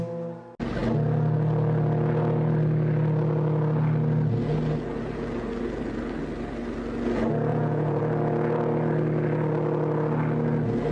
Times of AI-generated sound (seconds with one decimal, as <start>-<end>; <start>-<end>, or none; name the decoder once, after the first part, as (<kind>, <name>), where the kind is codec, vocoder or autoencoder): 7.5-8.0 (vocoder, Vocos)